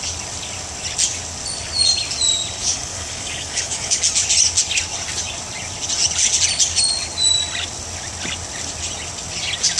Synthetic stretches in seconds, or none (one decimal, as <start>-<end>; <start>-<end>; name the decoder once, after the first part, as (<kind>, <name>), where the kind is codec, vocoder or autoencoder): 2.6-4.0 (codec, DAC)